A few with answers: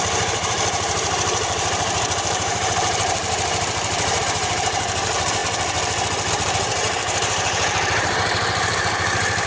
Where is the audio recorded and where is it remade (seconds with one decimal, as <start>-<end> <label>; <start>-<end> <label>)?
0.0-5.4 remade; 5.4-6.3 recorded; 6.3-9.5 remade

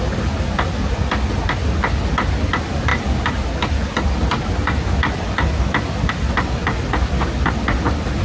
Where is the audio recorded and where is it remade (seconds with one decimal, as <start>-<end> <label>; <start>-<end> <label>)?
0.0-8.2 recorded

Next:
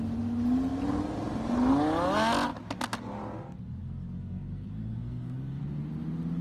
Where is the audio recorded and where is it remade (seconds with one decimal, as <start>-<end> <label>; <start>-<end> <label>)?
0.0-3.8 recorded; 3.8-5.6 remade; 5.6-6.4 recorded

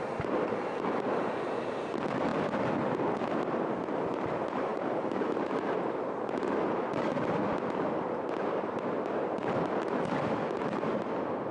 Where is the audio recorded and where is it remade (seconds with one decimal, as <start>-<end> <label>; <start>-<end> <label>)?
0.0-11.5 recorded